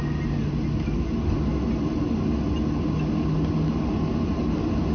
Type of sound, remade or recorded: recorded